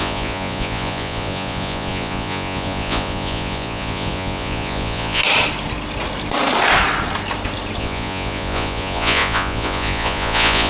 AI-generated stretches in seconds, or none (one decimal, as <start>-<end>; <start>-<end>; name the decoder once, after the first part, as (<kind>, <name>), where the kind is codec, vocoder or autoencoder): 0.0-5.2 (vocoder, Vocos); 7.8-10.7